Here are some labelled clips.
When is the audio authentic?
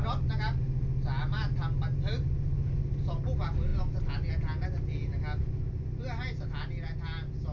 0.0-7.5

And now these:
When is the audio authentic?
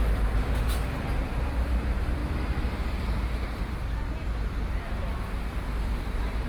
3.8-4.9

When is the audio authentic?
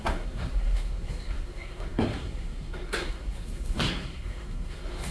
none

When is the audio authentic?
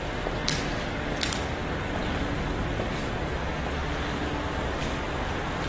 0.0-5.7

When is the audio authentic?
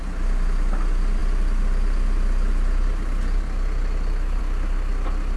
0.0-5.4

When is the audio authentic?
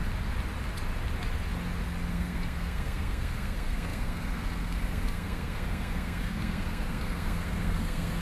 0.0-2.1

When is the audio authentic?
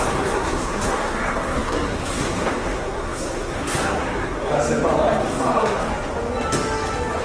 4.5-5.2; 5.9-7.2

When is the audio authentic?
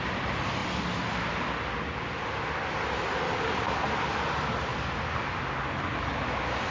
0.0-6.7